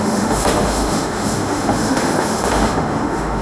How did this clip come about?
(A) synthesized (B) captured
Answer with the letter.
A